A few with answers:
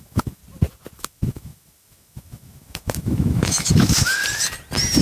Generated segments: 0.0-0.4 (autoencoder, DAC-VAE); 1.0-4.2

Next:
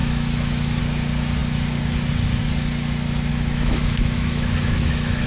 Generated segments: 0.0-0.8 (autoencoder, DAC-VAE); 3.3-5.3

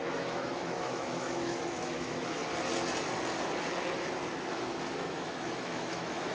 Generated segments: 0.0-2.4 (autoencoder, DAC-VAE); 4.3-6.3